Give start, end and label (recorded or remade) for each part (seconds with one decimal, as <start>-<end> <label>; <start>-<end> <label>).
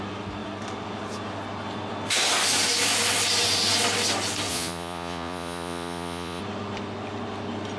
0.0-4.5 recorded; 4.5-6.4 remade; 6.4-7.8 recorded